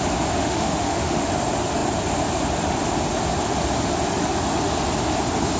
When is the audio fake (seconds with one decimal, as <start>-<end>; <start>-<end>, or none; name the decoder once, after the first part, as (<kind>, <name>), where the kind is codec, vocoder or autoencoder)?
0.4-1.3 (autoencoder, DAC-VAE)